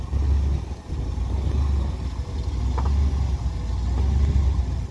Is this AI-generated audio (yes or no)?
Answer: no